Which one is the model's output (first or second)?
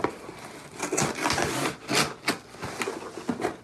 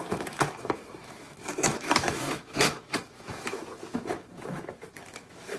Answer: second